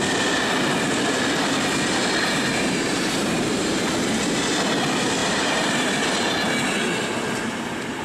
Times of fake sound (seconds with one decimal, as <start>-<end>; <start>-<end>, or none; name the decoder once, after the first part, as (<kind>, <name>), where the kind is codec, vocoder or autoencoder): 2.2-3.7 (vocoder, BigVGAN v2); 5.2-5.9